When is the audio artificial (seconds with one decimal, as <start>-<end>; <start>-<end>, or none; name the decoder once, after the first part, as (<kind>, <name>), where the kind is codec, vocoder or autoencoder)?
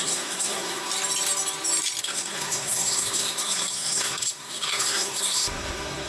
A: 0.0-0.9 (codec, SNAC); 2.0-6.1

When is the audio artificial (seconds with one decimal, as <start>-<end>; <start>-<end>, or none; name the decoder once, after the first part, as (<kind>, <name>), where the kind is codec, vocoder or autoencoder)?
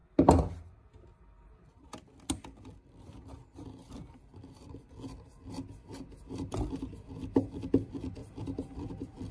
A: 4.0-4.8 (vocoder, BigVGAN v2); 8.2-8.9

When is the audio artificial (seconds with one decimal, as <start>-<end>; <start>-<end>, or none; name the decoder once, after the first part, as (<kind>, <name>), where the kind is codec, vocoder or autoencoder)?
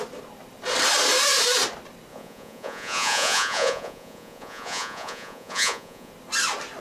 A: 2.1-6.1 (vocoder, Vocos)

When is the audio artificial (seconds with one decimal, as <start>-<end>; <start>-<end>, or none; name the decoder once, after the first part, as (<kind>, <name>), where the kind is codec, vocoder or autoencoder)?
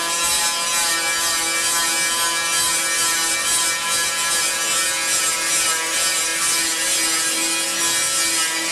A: none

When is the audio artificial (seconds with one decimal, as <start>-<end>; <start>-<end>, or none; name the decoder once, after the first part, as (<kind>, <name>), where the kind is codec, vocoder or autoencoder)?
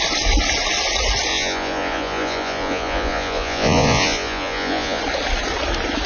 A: 1.3-5.0 (vocoder, Vocos)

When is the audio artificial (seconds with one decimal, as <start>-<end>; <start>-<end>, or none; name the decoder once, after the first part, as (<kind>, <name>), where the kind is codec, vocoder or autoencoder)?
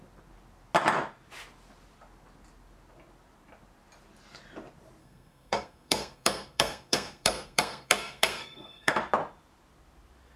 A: 5.0-9.0 (codec, SNAC)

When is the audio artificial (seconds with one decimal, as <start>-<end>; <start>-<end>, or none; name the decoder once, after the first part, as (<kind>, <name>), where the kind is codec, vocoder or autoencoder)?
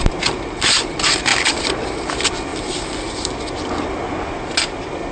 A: none